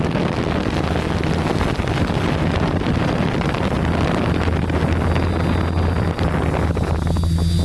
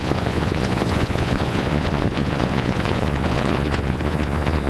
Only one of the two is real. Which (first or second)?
first